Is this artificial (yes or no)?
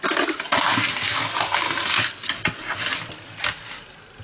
no